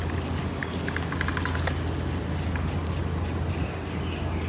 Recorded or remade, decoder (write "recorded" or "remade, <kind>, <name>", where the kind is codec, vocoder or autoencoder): recorded